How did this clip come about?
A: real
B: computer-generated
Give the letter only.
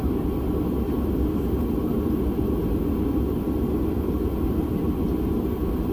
A